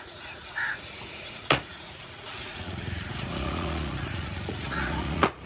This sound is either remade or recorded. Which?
remade